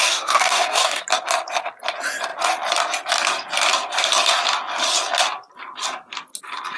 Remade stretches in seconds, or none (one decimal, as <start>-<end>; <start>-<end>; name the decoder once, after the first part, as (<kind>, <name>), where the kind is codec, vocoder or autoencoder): 0.0-1.0 (codec, DAC)